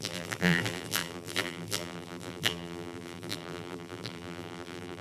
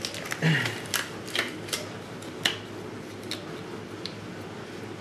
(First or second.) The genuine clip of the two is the second